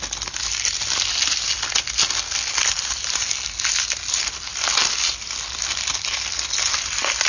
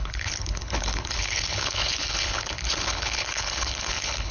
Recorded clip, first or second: first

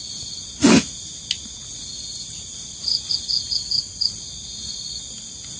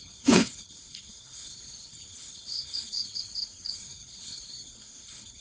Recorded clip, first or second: first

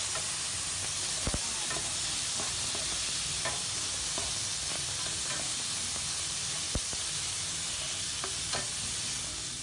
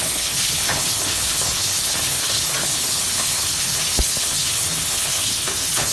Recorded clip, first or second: first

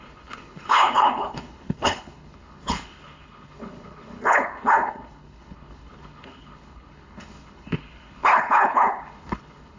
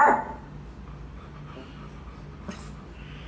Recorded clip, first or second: second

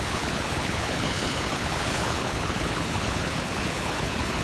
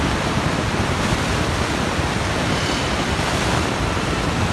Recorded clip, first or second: second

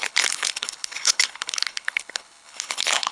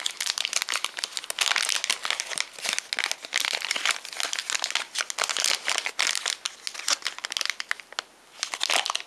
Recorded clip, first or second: second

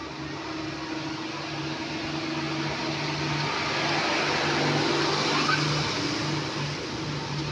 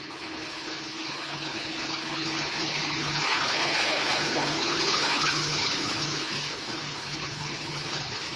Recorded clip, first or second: first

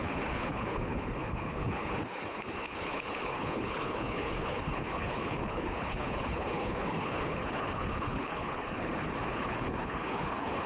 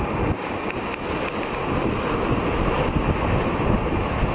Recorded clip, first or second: second